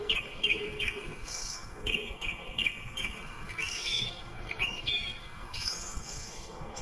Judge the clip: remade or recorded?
remade